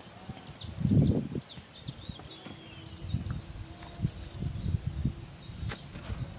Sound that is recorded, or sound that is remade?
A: recorded